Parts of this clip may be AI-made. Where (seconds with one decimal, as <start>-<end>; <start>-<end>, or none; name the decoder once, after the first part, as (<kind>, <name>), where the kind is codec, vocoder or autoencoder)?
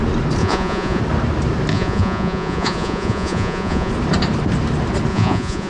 0.4-1.0 (vocoder, Vocos); 1.7-3.9; 5.1-5.7